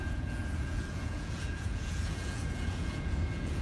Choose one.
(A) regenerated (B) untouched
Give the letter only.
A